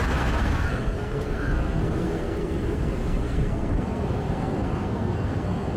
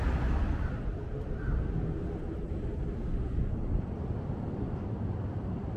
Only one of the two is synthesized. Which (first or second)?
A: first